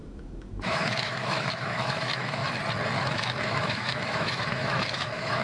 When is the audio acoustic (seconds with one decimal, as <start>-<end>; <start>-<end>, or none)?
2.4-3.1